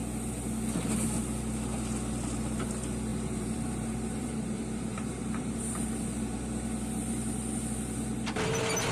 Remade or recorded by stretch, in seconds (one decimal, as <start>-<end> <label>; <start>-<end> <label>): 0.0-3.1 recorded; 3.1-5.6 remade; 5.6-8.9 recorded